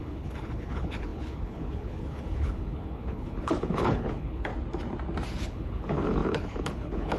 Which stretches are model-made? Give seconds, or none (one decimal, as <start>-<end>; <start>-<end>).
0.0-4.5; 5.3-7.2